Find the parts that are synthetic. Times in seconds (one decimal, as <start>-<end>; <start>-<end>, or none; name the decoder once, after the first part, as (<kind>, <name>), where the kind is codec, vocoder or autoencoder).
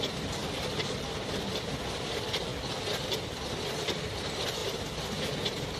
0.0-2.5 (vocoder, BigVGAN v2); 3.6-4.6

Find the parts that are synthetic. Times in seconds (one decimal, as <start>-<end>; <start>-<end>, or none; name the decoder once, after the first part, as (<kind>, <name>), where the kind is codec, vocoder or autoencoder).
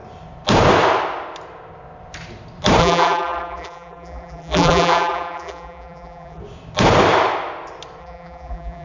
2.8-6.4 (vocoder, BigVGAN v2); 8.0-8.8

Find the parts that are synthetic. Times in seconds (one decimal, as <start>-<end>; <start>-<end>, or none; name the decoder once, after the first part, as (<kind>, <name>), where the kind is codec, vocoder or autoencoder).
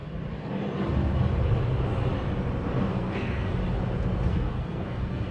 2.9-3.5 (codec, SNAC); 4.3-5.3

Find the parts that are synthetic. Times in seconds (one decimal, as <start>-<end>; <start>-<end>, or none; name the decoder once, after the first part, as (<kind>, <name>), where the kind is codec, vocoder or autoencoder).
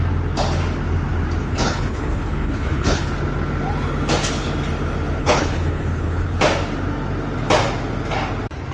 1.4-3.1 (codec, HILCodec); 5.2-6.4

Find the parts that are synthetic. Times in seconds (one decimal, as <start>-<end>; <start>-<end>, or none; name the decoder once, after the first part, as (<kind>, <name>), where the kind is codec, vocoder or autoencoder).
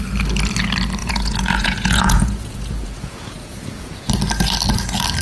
1.0-4.1 (vocoder, Vocos)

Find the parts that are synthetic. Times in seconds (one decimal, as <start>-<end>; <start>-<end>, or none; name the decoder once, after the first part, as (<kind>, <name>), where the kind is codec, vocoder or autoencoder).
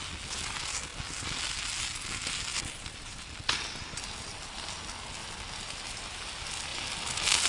none